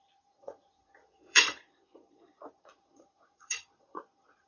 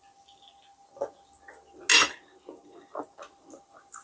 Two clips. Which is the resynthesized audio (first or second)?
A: first